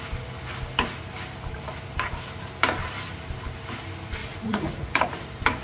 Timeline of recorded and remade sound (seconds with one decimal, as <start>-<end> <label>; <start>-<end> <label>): 0.0-4.2 recorded; 4.2-5.1 remade; 5.1-5.6 recorded